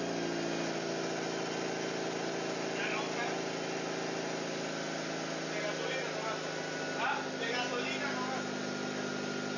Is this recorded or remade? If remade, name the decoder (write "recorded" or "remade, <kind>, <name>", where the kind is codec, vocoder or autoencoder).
recorded